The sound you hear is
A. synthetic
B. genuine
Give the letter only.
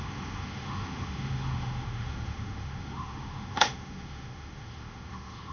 A